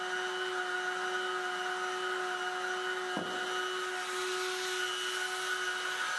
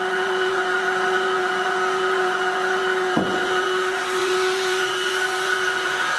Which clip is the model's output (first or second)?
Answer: second